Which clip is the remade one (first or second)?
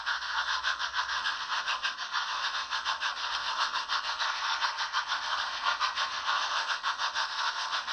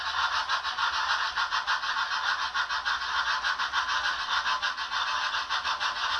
first